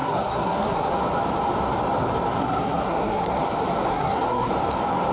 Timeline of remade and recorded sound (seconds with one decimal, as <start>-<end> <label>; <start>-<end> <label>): 0.0-0.9 remade; 0.9-2.4 recorded; 2.4-3.3 remade; 3.3-3.9 recorded; 3.9-4.5 remade; 4.5-5.1 recorded